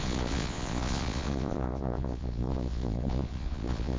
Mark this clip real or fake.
fake